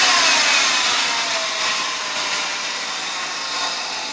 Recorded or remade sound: recorded